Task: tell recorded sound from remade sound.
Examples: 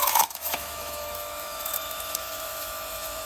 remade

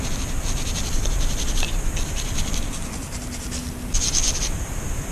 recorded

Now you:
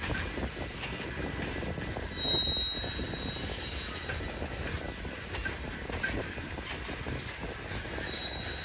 recorded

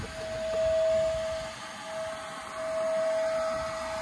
recorded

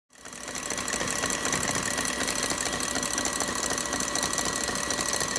recorded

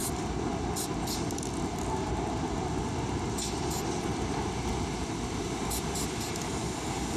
recorded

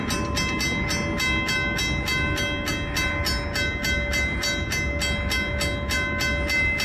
recorded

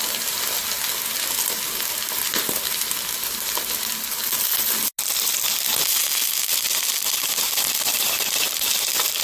recorded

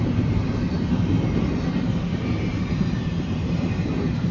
recorded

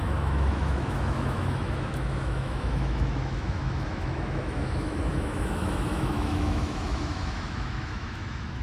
remade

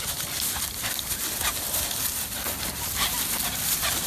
recorded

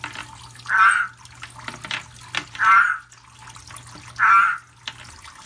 recorded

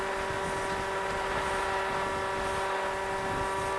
recorded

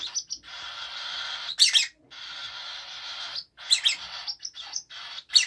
recorded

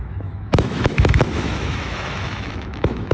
remade